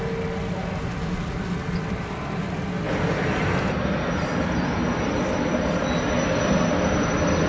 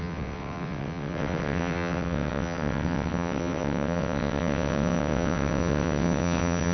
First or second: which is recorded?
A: first